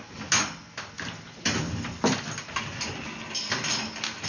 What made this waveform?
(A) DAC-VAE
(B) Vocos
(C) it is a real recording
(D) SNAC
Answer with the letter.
C